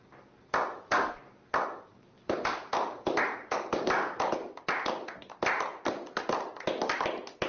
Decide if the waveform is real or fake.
fake